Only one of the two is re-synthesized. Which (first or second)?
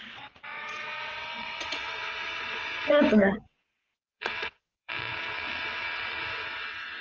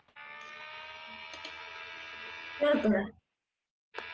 first